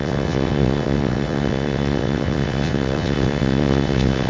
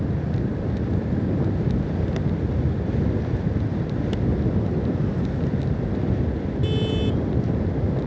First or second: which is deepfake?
first